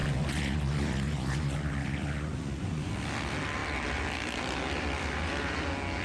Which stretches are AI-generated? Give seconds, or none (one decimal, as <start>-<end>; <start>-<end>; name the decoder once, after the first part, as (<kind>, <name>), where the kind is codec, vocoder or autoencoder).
0.0-2.9 (vocoder, Vocos)